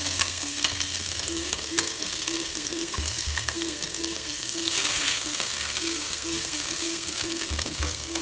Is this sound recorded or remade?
remade